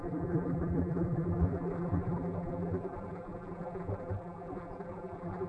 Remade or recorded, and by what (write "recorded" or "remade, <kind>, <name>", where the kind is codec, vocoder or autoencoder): remade, vocoder, BigVGAN v2